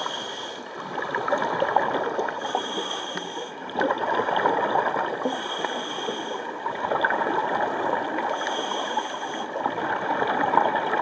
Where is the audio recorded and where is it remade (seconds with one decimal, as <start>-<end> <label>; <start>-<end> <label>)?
0.0-7.4 recorded; 7.4-8.7 remade; 8.7-11.0 recorded